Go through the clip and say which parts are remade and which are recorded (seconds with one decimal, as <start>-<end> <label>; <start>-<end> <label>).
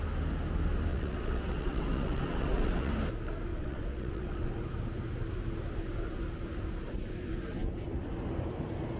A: 0.0-0.9 recorded; 0.9-2.9 remade; 2.9-3.5 recorded; 3.5-4.5 remade; 4.5-9.0 recorded